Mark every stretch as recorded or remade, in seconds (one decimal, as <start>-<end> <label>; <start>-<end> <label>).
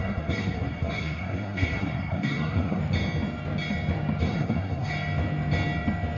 0.0-2.8 remade; 2.8-4.2 recorded; 4.2-4.9 remade; 4.9-6.2 recorded